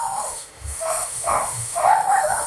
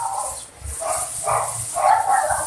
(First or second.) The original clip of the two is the second